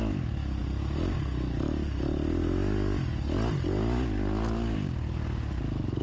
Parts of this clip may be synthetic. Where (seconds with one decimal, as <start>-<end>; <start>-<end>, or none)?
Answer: none